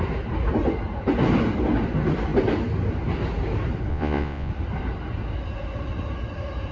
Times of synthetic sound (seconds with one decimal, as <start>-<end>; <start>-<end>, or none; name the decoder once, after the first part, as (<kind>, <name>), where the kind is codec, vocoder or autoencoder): 3.9-4.5 (vocoder, Vocos)